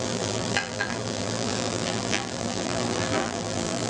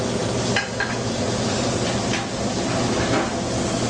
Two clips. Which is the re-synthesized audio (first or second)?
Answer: first